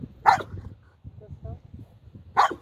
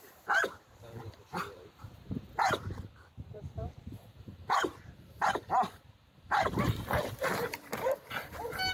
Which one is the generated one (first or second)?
second